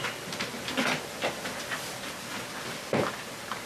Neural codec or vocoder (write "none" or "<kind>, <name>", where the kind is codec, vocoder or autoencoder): none